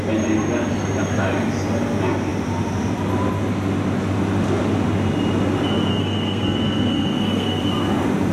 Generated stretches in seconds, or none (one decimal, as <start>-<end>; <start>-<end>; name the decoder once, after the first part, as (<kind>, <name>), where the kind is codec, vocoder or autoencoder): 5.9-7.6 (codec, SNAC)